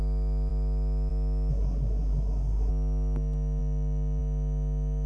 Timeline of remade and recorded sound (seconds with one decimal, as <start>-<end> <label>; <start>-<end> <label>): 0.0-1.5 recorded; 1.5-2.7 remade; 2.7-5.1 recorded